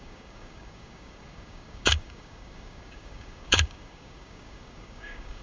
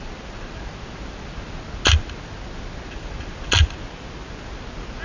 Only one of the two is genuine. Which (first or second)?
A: second